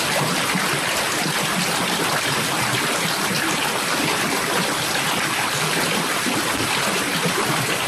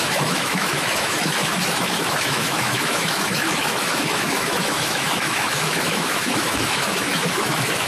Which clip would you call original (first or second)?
first